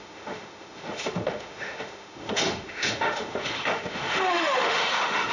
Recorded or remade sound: remade